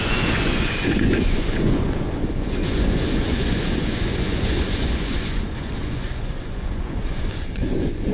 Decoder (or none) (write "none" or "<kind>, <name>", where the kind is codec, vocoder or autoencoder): vocoder, Vocos